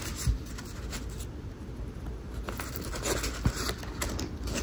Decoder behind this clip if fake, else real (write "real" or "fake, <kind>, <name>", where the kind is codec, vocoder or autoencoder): real